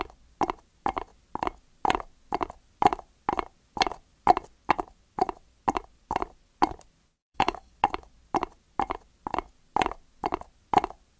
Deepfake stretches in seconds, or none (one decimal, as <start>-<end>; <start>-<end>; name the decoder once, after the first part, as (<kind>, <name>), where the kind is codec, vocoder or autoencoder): 7.2-7.7 (codec, DAC)